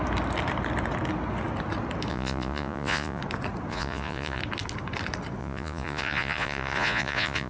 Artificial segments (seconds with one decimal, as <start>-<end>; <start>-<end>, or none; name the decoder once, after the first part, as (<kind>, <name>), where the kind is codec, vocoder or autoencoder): 2.1-3.2 (vocoder, Vocos); 3.7-4.4; 5.4-7.5